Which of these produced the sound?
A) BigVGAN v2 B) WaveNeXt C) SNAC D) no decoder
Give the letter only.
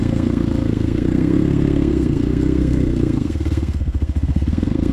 C